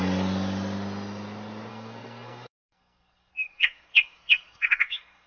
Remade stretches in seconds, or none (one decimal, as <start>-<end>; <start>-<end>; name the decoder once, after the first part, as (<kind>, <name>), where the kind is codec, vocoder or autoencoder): 1.7-5.3 (codec, SNAC)